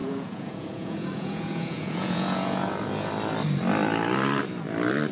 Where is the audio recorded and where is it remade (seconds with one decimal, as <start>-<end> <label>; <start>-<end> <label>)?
0.0-3.1 remade; 3.1-5.1 recorded